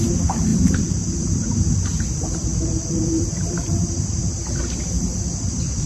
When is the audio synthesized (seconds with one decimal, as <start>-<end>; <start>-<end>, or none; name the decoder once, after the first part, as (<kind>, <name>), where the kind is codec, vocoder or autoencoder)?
0.5-1.7 (vocoder, BigVGAN v2); 2.5-4.2